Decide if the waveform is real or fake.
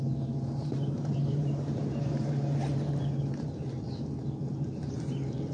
fake